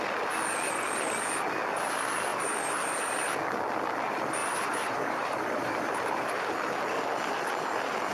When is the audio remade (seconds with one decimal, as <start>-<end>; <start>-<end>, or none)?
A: 2.3-3.1; 4.4-6.5